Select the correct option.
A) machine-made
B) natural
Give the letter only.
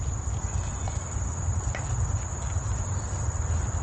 B